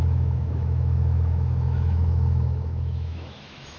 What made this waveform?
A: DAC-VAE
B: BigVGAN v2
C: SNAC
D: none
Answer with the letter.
A